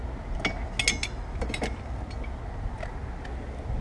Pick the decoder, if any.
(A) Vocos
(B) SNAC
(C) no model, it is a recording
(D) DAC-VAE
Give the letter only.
C